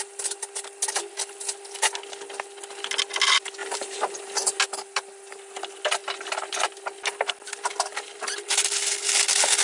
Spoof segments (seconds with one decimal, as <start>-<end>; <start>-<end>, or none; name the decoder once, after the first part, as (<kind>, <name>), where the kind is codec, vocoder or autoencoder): 3.6-4.6 (vocoder, BigVGAN v2)